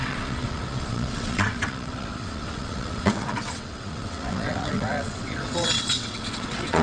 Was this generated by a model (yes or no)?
yes